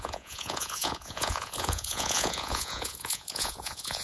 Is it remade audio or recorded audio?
remade